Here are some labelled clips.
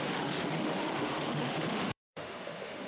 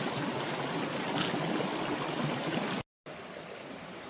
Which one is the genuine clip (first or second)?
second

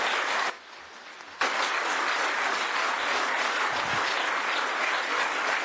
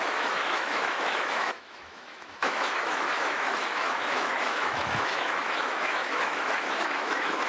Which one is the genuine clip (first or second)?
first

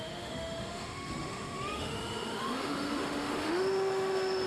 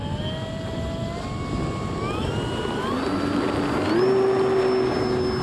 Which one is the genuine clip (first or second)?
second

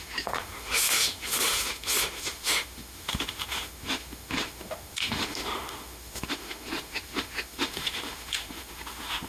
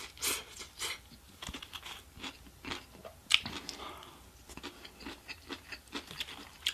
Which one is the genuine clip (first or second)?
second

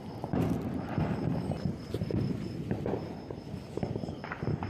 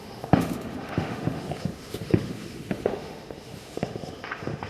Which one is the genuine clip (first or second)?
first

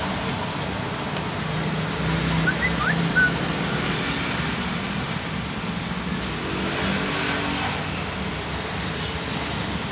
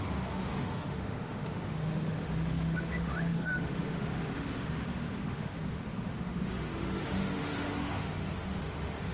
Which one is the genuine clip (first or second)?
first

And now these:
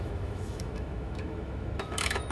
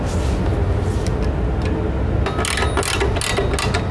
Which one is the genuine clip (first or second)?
second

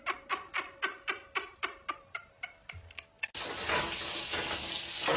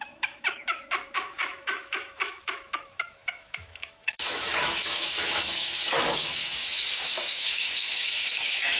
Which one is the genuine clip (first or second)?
first